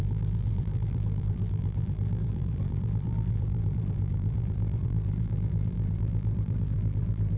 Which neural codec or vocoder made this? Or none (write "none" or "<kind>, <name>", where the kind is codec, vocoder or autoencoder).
vocoder, BigVGAN v2